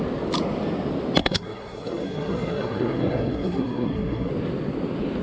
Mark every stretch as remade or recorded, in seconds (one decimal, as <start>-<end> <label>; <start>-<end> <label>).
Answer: 0.0-1.2 recorded; 1.2-4.3 remade; 4.3-5.2 recorded